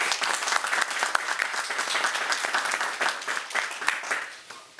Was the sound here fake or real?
real